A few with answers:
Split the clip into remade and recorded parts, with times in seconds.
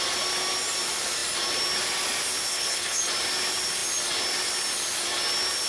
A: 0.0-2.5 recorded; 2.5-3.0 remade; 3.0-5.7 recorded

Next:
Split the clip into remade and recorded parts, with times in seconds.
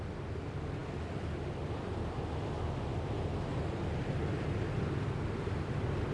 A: 0.0-2.9 recorded; 2.9-3.6 remade; 3.6-6.1 recorded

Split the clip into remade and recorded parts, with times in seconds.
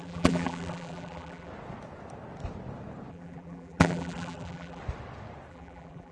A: 0.0-1.5 remade; 1.5-3.1 recorded; 3.1-4.8 remade; 4.8-5.5 recorded; 5.5-6.1 remade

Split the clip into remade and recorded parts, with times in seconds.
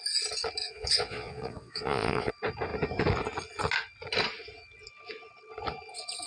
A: 0.0-0.6 recorded; 0.6-2.3 remade; 2.3-6.3 recorded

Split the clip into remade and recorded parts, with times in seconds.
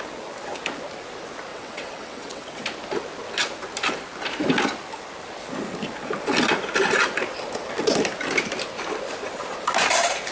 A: 0.0-1.5 recorded; 1.5-2.6 remade; 2.6-10.3 recorded